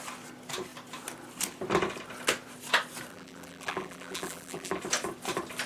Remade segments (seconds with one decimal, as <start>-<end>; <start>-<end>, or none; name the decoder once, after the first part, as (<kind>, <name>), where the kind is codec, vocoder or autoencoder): 3.1-4.8 (vocoder, BigVGAN v2)